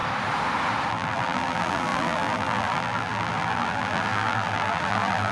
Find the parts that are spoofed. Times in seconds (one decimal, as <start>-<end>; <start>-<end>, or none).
0.9-5.3